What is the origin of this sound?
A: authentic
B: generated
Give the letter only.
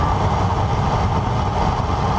A